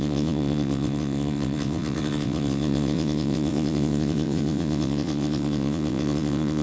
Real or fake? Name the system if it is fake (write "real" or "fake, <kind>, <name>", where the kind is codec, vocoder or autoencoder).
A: fake, vocoder, WaveNeXt